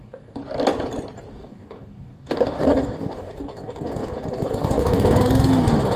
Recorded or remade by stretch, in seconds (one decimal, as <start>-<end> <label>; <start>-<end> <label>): 0.0-0.4 remade; 0.4-1.3 recorded; 1.3-6.0 remade